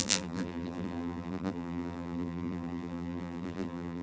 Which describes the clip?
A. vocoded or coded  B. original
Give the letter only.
A